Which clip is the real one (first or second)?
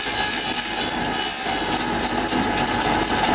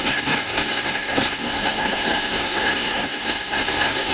first